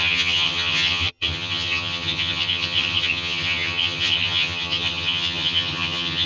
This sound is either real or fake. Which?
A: fake